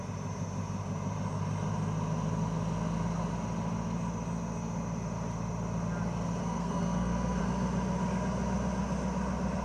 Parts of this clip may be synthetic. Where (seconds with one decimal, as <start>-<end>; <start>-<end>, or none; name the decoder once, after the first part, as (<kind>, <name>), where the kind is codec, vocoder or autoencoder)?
6.4-7.4 (codec, SNAC)